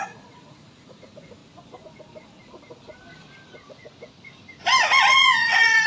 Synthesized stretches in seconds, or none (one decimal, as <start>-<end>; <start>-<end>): 0.0-1.4; 4.9-5.9